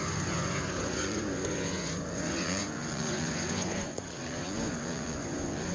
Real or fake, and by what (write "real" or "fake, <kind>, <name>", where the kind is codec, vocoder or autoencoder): fake, vocoder, Vocos